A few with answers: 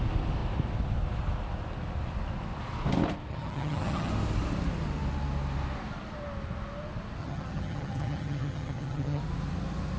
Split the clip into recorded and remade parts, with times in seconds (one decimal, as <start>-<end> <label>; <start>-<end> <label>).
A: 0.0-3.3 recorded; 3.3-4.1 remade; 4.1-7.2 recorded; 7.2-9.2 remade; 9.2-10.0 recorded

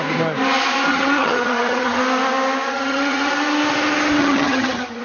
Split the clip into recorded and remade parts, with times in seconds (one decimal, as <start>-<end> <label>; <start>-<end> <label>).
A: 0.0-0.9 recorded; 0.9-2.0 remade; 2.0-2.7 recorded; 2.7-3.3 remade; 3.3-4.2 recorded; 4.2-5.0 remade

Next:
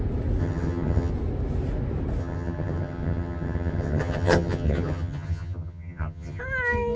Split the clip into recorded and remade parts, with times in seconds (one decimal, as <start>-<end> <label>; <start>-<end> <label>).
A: 0.0-0.4 recorded; 0.4-1.1 remade; 1.1-2.2 recorded; 2.2-6.4 remade; 6.4-7.0 recorded